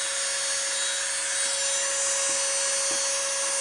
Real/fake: real